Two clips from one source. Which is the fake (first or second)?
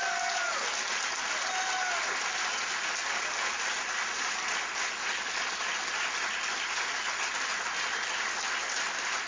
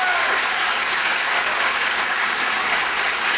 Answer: second